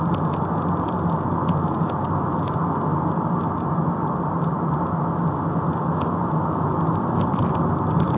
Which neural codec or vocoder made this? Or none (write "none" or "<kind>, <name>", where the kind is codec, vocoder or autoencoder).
none